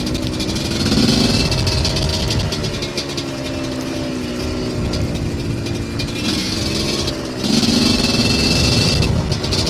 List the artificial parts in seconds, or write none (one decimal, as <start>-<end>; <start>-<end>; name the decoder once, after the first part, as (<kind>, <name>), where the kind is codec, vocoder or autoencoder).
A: none